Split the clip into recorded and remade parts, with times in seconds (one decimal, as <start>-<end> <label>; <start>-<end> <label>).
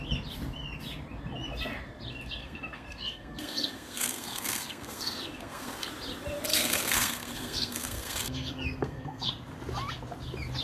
0.0-2.4 recorded; 2.4-5.9 remade; 5.9-6.5 recorded; 6.5-9.3 remade; 9.3-10.6 recorded